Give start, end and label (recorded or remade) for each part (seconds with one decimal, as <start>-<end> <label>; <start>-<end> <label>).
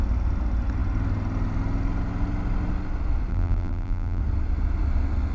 0.0-3.3 recorded; 3.3-4.2 remade; 4.2-5.3 recorded